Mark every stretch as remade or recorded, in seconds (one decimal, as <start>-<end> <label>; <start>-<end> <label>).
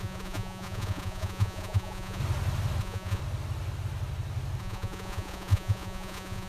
0.0-2.2 remade; 2.2-2.8 recorded; 2.8-3.2 remade; 3.2-4.6 recorded; 4.6-6.5 remade